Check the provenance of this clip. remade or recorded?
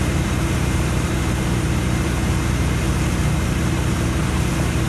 remade